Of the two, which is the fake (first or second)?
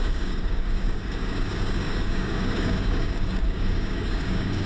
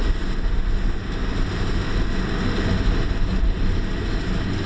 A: first